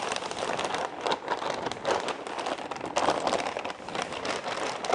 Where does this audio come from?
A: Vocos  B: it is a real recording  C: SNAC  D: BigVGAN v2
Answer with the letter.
B